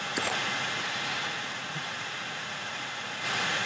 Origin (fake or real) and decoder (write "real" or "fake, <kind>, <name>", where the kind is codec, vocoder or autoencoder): fake, vocoder, Vocos